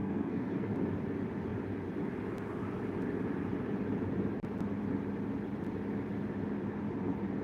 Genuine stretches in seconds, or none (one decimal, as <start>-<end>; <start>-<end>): 0.7-7.4